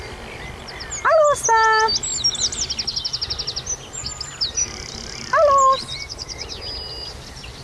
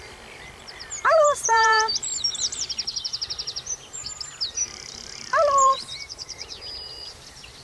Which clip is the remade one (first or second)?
second